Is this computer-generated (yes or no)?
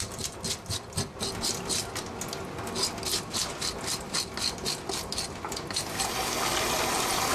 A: no